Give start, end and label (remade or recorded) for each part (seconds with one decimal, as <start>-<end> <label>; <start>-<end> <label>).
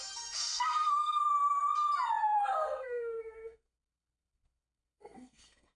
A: 0.0-0.4 recorded; 0.4-1.2 remade; 1.2-2.2 recorded; 2.2-5.8 remade